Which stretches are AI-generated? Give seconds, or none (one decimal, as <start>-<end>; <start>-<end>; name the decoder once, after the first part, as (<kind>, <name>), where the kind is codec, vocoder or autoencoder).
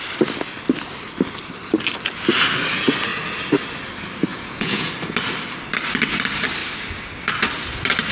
4.3-4.9 (vocoder, Vocos)